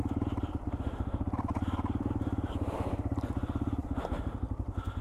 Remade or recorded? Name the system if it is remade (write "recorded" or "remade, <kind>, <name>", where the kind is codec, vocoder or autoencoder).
remade, vocoder, BigVGAN v2